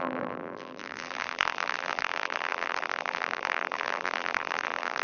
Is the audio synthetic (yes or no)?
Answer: yes